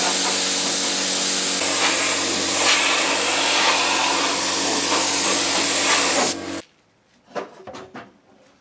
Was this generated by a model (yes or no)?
no